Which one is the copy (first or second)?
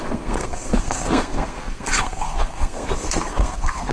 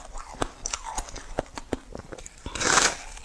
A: first